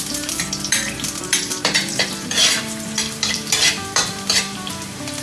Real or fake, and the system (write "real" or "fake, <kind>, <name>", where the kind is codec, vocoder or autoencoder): fake, vocoder, BigVGAN v2